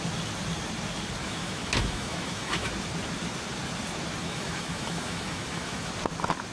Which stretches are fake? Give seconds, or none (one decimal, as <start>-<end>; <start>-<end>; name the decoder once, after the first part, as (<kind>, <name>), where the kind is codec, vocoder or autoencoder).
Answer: 1.2-2.7 (autoencoder, DAC-VAE); 4.2-5.9